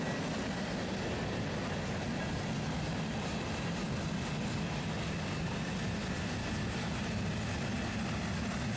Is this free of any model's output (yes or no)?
yes